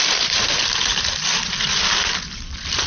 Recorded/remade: recorded